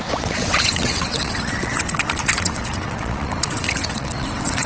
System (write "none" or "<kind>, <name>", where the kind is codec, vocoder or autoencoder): vocoder, WaveNeXt